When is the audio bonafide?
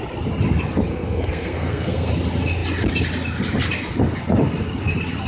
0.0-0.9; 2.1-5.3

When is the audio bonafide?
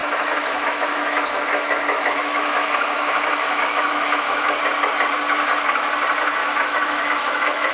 4.6-6.4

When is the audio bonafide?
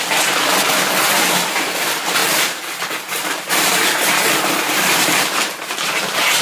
0.0-2.2; 5.5-6.4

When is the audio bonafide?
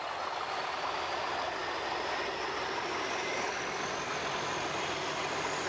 0.0-5.7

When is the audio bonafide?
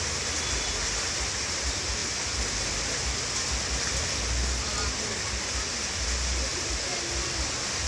0.0-6.5; 7.1-7.9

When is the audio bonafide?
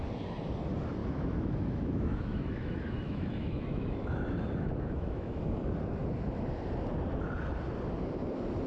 0.0-1.0; 5.4-8.7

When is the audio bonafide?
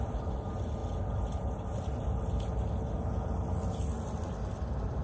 0.0-5.0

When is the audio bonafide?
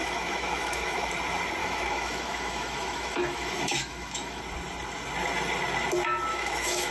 1.1-1.6; 4.4-6.3